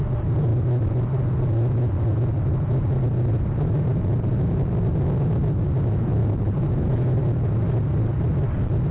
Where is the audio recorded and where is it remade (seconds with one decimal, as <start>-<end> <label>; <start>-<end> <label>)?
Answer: 0.0-6.2 recorded; 6.2-7.2 remade; 7.2-8.9 recorded